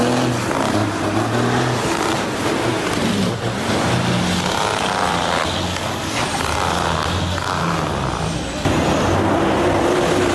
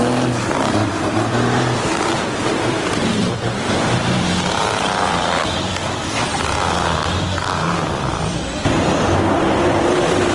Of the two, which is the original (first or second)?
first